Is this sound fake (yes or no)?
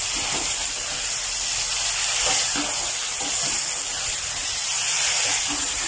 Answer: no